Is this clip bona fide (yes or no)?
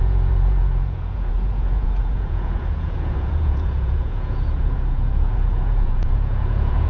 no